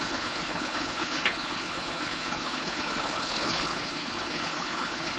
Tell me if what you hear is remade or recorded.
remade